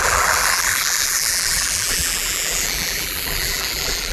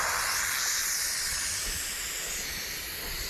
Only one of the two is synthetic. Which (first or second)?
first